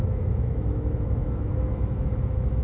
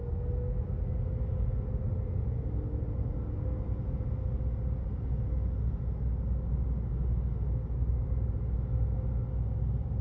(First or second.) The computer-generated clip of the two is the first